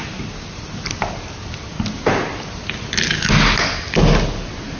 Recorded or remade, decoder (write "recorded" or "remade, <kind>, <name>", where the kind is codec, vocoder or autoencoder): recorded